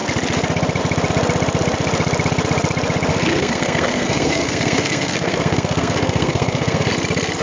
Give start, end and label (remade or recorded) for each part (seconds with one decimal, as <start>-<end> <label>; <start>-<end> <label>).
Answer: 0.0-3.1 recorded; 3.1-6.9 remade; 6.9-7.4 recorded

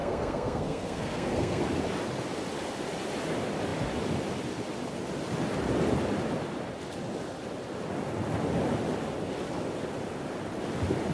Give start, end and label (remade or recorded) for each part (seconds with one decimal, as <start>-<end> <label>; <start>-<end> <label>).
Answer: 0.0-1.6 remade; 1.6-11.1 recorded

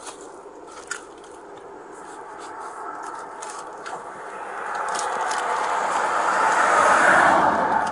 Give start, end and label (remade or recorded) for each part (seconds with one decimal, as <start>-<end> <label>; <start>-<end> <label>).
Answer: 0.0-7.9 recorded

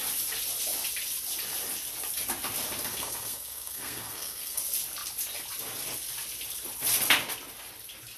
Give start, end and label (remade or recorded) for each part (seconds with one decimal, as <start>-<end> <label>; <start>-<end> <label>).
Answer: 0.0-2.9 recorded; 2.9-4.6 remade; 4.6-8.2 recorded

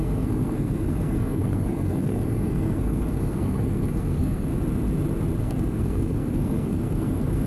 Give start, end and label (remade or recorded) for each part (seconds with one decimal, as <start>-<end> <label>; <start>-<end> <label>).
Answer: 0.0-4.5 remade; 4.5-5.4 recorded; 5.4-7.5 remade

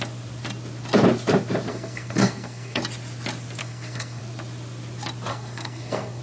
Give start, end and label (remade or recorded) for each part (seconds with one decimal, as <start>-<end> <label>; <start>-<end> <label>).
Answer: 0.0-1.7 recorded; 1.7-2.8 remade; 2.8-3.6 recorded; 3.6-4.2 remade; 4.2-5.3 recorded; 5.3-6.2 remade